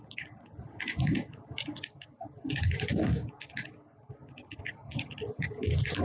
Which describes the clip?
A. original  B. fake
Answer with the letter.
A